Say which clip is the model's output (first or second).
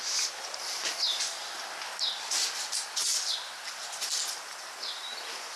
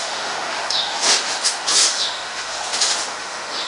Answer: second